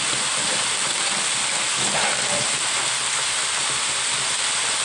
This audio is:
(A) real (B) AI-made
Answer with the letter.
A